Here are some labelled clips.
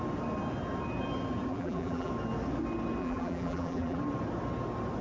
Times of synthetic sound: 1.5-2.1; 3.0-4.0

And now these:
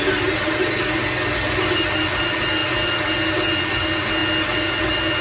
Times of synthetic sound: none

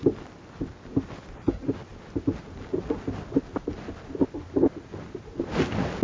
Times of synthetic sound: none

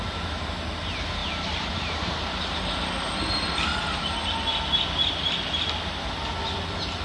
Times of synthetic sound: 1.2-2.4; 3.7-4.2

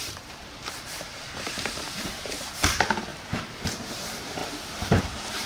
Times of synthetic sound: 0.0-3.1; 3.8-5.5